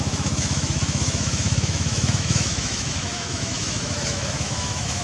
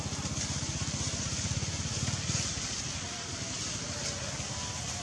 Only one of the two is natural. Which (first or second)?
second